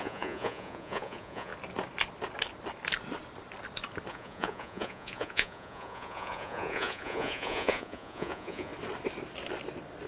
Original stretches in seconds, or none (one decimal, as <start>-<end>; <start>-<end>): 1.5-4.1; 8.7-10.1